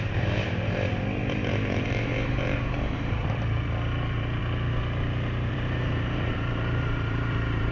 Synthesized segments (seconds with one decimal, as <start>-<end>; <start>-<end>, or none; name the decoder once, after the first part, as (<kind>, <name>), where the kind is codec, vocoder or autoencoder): 0.0-4.4 (vocoder, BigVGAN v2); 5.5-7.7